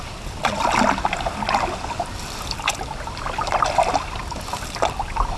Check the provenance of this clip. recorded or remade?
recorded